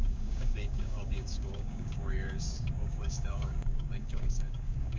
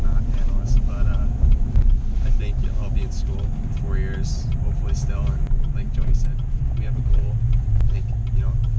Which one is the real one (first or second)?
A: second